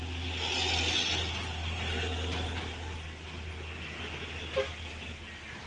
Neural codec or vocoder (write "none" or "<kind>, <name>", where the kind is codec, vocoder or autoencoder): none